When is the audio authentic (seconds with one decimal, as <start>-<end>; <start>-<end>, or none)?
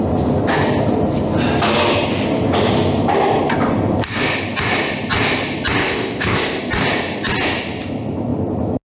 0.0-5.8; 6.6-8.9